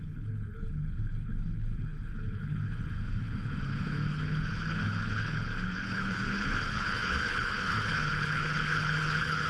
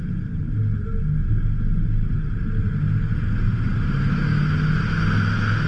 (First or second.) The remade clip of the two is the first